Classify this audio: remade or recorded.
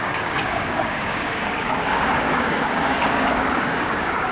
remade